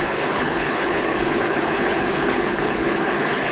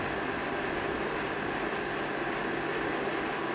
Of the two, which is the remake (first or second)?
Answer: first